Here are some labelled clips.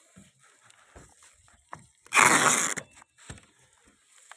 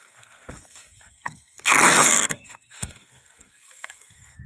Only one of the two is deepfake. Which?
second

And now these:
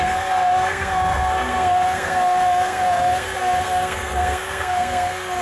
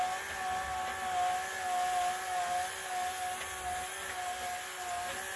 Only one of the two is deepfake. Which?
first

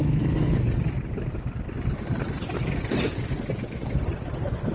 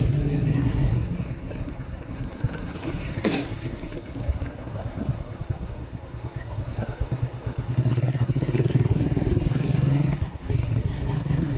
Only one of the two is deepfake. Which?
second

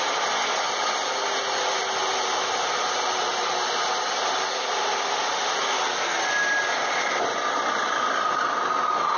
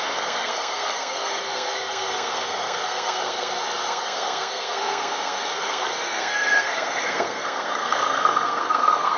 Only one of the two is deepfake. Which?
second